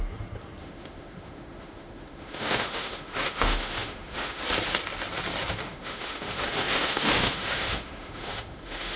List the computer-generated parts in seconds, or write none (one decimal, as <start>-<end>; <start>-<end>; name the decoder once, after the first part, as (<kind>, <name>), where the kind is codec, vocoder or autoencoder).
0.6-4.4 (autoencoder, DAC-VAE); 5.6-9.0

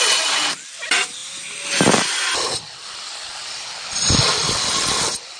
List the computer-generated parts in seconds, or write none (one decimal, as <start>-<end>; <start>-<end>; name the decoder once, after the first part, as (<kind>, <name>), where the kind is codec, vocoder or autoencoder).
none